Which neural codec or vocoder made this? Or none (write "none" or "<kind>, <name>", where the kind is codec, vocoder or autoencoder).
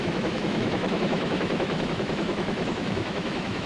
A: autoencoder, DAC-VAE